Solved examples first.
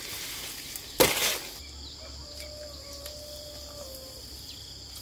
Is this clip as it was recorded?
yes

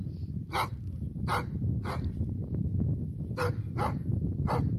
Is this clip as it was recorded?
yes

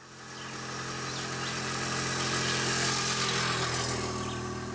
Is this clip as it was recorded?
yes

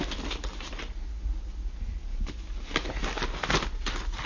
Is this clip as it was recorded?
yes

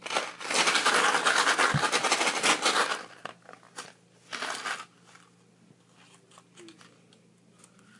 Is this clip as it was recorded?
yes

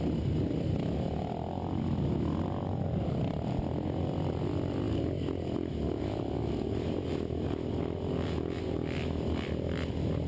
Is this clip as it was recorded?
yes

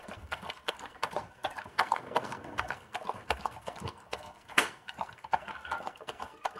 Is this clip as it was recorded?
no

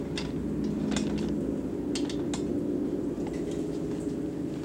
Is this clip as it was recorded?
yes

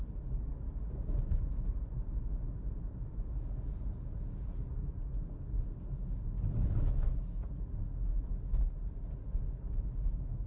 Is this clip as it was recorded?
yes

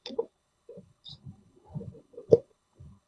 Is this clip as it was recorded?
no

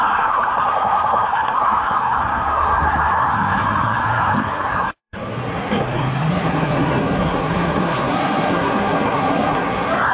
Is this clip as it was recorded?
no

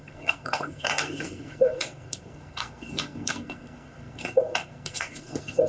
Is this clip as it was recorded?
no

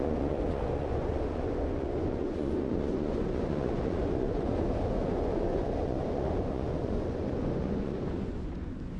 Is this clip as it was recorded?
no